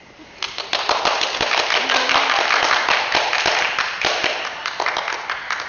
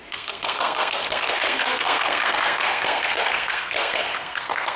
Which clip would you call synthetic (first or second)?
second